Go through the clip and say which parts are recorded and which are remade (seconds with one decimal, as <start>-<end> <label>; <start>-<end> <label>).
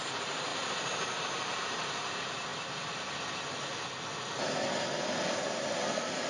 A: 0.0-2.5 remade; 2.5-5.7 recorded; 5.7-6.3 remade